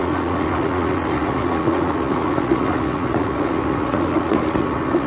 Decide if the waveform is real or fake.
fake